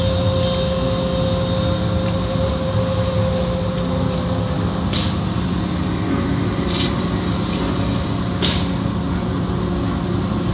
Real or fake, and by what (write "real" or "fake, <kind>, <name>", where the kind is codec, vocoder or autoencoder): real